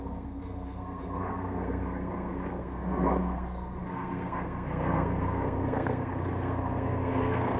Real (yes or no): no